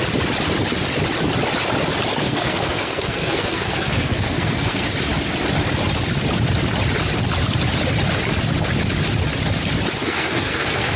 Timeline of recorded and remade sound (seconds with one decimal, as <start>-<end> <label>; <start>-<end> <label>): 0.0-2.2 recorded; 2.2-4.9 remade; 4.9-10.0 recorded; 10.0-11.0 remade